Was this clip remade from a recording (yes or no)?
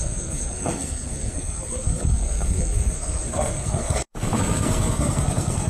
yes